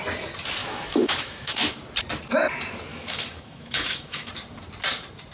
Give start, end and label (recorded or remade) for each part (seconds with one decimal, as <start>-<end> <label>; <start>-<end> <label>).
0.0-0.6 recorded; 0.6-1.7 remade; 1.7-2.9 recorded; 2.9-4.3 remade; 4.3-5.3 recorded